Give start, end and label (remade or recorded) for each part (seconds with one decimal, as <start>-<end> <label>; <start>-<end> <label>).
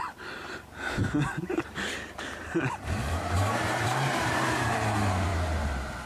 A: 0.0-6.1 remade